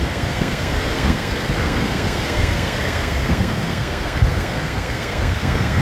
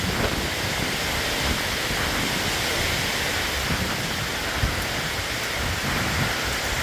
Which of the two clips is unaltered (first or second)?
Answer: second